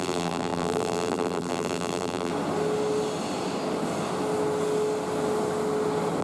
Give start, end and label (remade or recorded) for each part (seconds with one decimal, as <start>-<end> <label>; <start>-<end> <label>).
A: 0.0-2.3 remade; 2.3-6.2 recorded